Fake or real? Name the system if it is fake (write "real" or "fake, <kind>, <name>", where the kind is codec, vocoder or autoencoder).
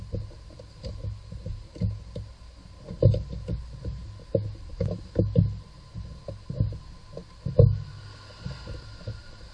real